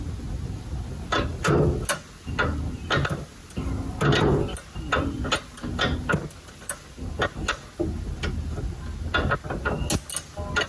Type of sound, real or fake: real